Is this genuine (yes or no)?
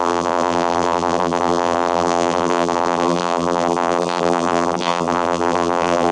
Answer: no